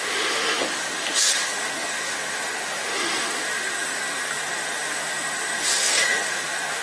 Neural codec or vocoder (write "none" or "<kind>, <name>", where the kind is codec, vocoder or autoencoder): autoencoder, DAC-VAE